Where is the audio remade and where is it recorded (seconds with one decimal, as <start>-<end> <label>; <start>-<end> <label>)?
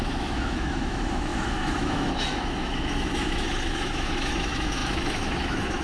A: 0.0-5.8 remade